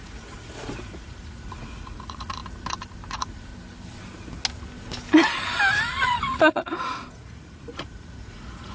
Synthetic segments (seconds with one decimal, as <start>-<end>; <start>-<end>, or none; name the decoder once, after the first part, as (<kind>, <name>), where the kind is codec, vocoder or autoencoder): 0.0-2.4 (vocoder, Vocos); 3.1-3.5; 5.9-8.7